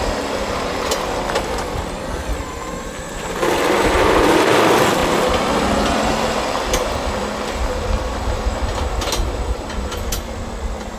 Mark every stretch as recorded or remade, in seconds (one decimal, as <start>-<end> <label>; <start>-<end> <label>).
0.0-11.0 remade